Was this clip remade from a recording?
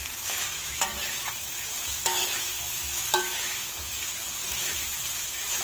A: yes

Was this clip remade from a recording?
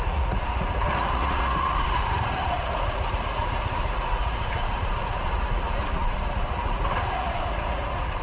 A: yes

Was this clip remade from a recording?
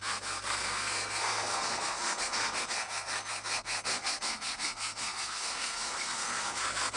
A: yes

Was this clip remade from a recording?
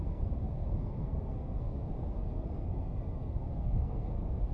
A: yes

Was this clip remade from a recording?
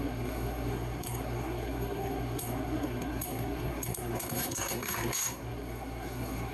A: yes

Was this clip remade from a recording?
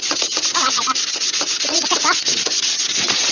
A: yes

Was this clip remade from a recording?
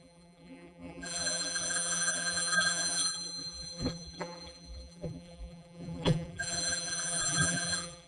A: yes